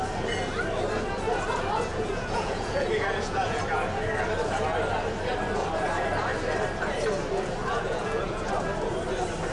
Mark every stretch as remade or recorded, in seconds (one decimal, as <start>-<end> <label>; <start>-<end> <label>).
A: 0.0-1.9 recorded; 1.9-3.6 remade; 3.6-7.6 recorded; 7.6-8.4 remade; 8.4-9.5 recorded